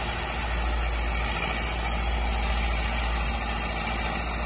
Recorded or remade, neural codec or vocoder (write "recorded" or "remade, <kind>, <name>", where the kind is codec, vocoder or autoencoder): recorded